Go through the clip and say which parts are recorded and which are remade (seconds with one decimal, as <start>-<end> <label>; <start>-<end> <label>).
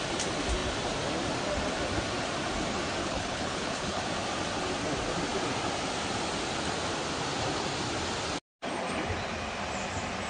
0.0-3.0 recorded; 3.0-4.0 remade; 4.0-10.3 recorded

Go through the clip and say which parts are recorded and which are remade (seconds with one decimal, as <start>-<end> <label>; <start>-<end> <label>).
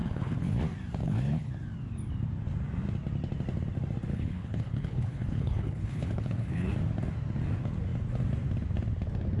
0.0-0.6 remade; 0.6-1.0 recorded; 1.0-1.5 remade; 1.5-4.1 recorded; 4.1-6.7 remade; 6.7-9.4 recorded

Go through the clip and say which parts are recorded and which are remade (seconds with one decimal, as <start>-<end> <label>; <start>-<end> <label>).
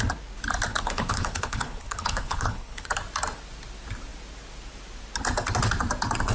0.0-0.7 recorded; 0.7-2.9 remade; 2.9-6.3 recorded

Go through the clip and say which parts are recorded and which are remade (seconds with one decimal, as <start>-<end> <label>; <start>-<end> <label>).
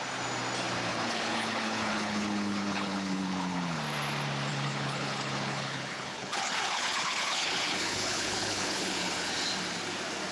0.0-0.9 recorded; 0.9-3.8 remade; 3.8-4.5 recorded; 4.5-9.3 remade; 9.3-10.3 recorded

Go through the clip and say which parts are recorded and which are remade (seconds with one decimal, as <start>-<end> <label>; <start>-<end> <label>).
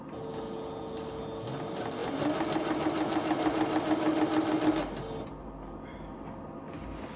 0.0-7.2 recorded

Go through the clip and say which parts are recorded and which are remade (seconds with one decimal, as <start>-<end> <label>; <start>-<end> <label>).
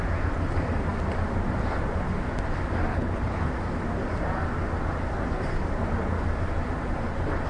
0.0-2.9 recorded; 2.9-3.5 remade; 3.5-7.5 recorded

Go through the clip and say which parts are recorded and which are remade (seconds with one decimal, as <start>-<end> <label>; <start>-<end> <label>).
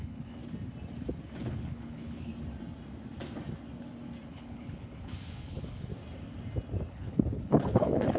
0.0-0.4 remade; 0.4-1.4 recorded; 1.4-2.3 remade; 2.3-4.3 recorded; 4.3-5.9 remade; 5.9-6.9 recorded; 6.9-8.2 remade